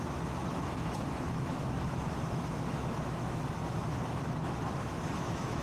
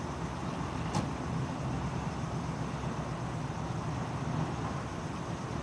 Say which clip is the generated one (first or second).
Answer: first